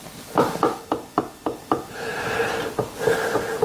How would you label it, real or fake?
real